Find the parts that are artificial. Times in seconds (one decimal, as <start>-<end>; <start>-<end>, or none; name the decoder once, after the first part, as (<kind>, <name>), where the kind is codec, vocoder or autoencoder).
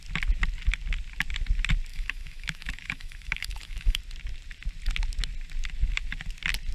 1.9-4.0 (autoencoder, DAC-VAE)